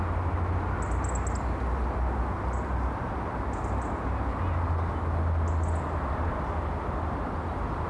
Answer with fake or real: real